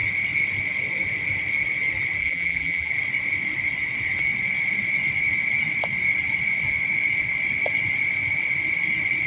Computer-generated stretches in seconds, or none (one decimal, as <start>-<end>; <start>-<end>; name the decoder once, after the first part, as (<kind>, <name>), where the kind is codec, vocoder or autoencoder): 2.2-2.9 (vocoder, BigVGAN v2)